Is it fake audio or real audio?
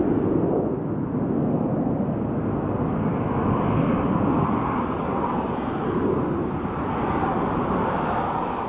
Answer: real